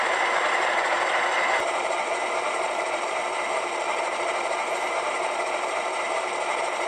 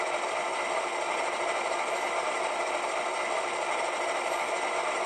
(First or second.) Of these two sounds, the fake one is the first